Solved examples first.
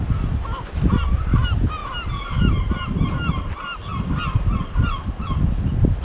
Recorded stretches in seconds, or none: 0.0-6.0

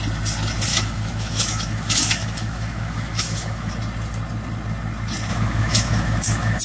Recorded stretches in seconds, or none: 0.0-0.7; 3.7-5.3